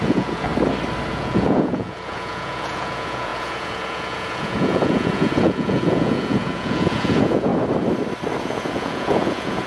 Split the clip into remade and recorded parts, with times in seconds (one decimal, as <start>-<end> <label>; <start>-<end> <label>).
0.0-0.5 remade; 0.5-1.1 recorded; 1.1-7.5 remade; 7.5-8.4 recorded; 8.4-9.7 remade